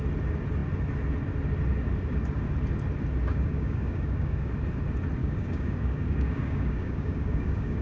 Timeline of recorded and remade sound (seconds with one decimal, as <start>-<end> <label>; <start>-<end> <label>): 0.0-3.3 recorded; 3.3-4.5 remade; 4.5-5.2 recorded; 5.2-7.8 remade